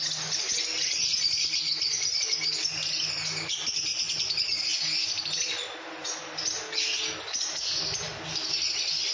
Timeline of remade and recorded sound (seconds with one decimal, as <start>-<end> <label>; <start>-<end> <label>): 0.0-9.1 recorded